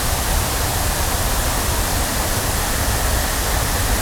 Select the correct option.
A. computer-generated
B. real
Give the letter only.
B